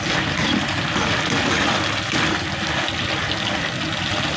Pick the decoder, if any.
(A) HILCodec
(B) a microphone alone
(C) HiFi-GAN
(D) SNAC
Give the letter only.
B